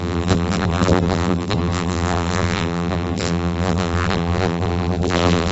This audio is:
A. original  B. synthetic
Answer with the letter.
B